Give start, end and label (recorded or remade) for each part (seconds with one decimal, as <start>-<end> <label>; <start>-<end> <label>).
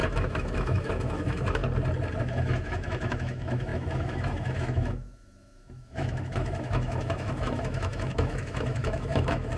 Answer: 0.0-1.6 remade; 1.6-2.2 recorded; 2.2-9.6 remade